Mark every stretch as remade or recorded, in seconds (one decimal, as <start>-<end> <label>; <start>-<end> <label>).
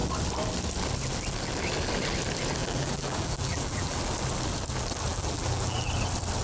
0.0-2.6 recorded; 2.6-4.0 remade; 4.0-5.1 recorded; 5.1-5.9 remade; 5.9-6.4 recorded